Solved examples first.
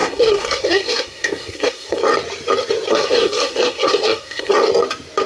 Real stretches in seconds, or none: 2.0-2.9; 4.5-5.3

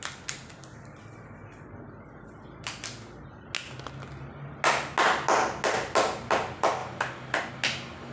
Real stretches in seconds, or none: 0.0-8.1

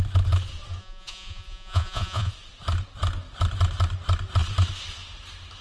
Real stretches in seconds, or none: 0.0-0.8; 2.3-5.6